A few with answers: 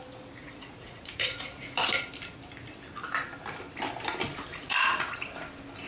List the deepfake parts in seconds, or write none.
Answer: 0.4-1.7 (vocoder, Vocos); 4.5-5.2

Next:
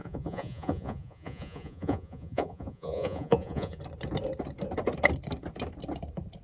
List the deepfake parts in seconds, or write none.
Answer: 0.0-3.8 (vocoder, Vocos)

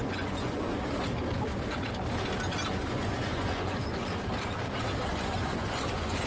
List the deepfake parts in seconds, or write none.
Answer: 0.0-0.7 (vocoder, Vocos); 2.7-3.8; 5.1-6.3

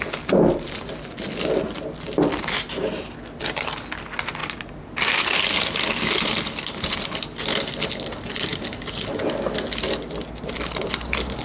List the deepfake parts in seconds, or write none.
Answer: none

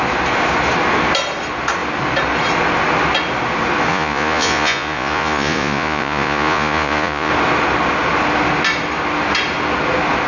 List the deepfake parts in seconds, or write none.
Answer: 3.9-7.3 (vocoder, Vocos)

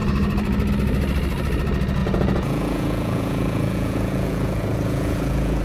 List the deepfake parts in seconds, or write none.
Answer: 2.0-5.6 (vocoder, Vocos)

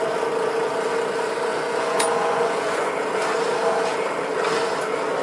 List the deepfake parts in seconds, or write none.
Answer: 1.5-2.9 (vocoder, Vocos)